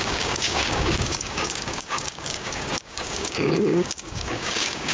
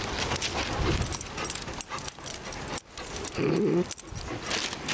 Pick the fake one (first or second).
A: first